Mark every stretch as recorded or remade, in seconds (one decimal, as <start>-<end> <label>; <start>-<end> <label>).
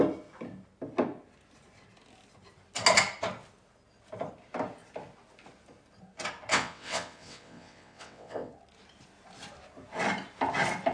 0.0-6.5 recorded; 6.5-8.5 remade; 8.5-10.9 recorded